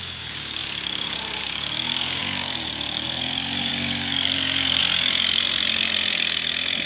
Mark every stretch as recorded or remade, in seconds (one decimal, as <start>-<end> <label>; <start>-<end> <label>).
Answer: 0.0-4.8 remade; 4.8-6.9 recorded

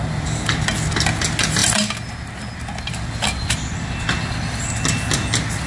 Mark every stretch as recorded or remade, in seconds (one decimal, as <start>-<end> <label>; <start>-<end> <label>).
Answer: 0.0-5.7 recorded

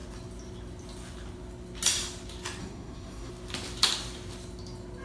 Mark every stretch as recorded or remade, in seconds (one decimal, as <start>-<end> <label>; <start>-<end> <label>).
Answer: 0.0-2.6 recorded; 2.6-3.3 remade; 3.3-5.0 recorded

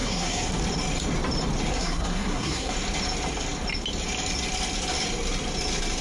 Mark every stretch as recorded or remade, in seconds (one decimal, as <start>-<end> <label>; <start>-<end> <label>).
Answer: 0.0-0.5 remade; 0.5-1.7 recorded; 1.7-2.7 remade; 2.7-6.0 recorded

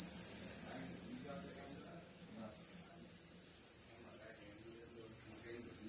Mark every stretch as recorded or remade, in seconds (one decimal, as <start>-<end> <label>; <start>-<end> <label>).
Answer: 0.0-1.9 recorded; 1.9-2.5 remade; 2.5-5.9 recorded